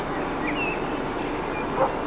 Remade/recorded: recorded